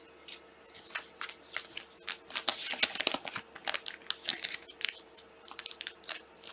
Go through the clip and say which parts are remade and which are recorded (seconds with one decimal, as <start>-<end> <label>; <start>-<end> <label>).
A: 0.0-4.3 recorded; 4.3-6.5 remade